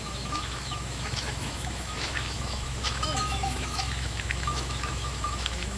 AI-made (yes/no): yes